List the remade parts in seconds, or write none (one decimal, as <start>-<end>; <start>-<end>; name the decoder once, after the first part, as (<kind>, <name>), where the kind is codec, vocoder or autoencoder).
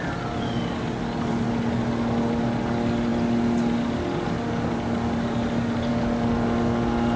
none